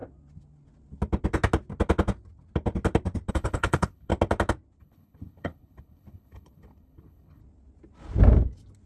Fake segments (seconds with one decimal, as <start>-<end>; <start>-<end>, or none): 3.3-4.1; 4.8-7.4